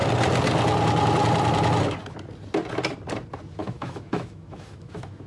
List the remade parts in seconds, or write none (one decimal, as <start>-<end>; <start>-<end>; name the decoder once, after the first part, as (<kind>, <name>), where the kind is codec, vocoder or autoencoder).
3.6-5.3 (autoencoder, DAC-VAE)